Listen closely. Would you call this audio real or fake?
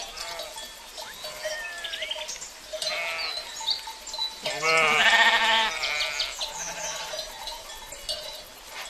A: real